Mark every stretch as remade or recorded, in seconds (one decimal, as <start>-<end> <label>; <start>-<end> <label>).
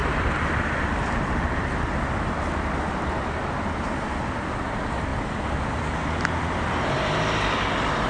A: 0.0-2.4 remade; 2.4-5.1 recorded; 5.1-5.8 remade; 5.8-8.1 recorded